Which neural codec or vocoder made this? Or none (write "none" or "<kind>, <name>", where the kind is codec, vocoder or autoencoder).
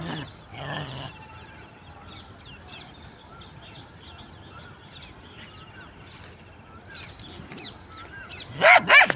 none